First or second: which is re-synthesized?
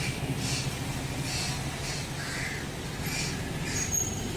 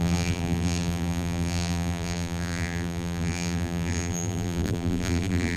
second